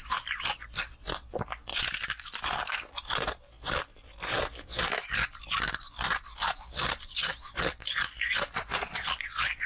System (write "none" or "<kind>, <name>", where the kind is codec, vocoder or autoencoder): vocoder, BigVGAN v2